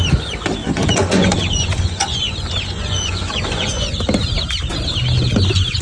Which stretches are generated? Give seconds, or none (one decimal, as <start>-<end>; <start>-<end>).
0.6-3.9